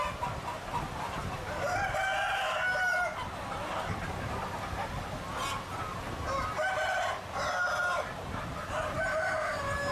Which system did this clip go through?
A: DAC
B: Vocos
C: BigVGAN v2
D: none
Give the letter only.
D